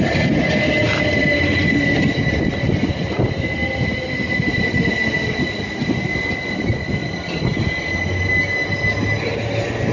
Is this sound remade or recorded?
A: recorded